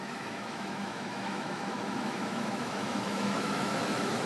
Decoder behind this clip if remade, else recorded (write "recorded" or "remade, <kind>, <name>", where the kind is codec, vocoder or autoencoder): remade, autoencoder, DAC-VAE